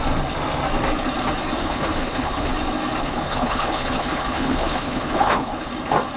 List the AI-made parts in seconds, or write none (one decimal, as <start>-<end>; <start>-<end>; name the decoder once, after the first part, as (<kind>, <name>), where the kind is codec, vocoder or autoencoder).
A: 1.6-2.5 (codec, HILCodec); 3.0-5.7